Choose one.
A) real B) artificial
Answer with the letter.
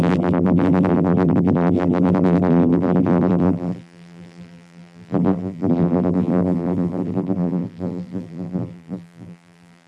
B